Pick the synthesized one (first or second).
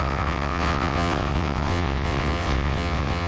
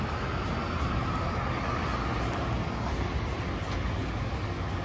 first